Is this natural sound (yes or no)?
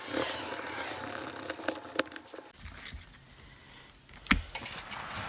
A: yes